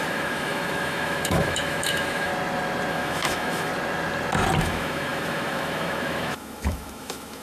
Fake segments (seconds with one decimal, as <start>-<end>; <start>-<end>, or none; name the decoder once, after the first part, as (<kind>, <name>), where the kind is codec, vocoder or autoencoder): 0.0-2.3 (autoencoder, DAC-VAE); 2.9-3.7; 4.6-7.4